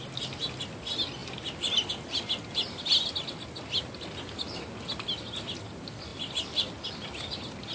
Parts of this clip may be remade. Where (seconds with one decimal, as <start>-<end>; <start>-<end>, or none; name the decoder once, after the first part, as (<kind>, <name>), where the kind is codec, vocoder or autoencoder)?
none